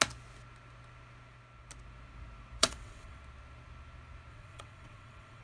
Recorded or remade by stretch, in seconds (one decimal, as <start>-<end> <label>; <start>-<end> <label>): 0.0-2.6 recorded; 2.6-3.2 remade; 3.2-4.3 recorded; 4.3-5.4 remade